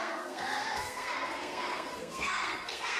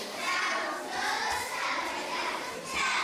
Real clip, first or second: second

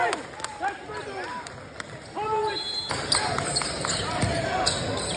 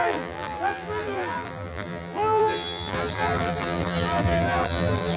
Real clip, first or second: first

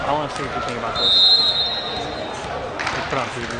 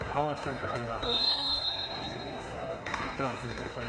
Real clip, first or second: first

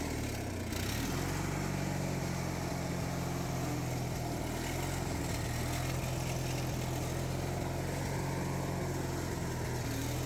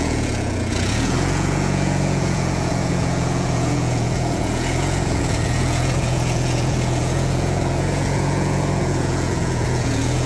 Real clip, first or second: first